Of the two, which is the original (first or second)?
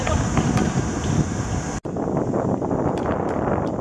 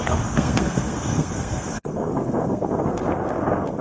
first